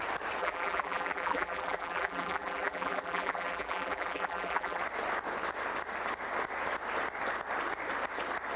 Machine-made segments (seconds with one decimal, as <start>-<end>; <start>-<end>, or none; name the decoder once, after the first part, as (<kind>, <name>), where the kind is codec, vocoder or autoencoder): 0.4-4.8 (vocoder, BigVGAN v2)

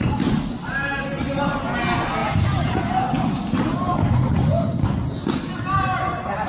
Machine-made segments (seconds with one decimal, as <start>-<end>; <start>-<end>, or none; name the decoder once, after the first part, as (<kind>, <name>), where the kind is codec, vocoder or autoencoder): 2.2-2.8 (vocoder, Vocos)

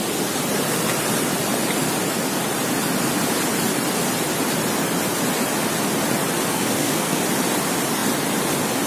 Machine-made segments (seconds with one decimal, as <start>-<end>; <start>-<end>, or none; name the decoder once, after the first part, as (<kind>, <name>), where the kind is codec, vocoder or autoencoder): 6.5-7.2 (codec, SNAC)

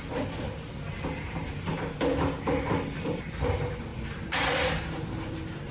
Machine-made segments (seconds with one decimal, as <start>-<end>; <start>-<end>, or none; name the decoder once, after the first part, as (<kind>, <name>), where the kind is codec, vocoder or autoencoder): none

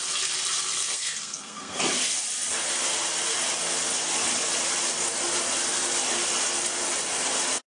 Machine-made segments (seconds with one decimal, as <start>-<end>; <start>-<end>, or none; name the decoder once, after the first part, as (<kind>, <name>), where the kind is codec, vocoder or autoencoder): 0.8-1.8 (codec, SNAC)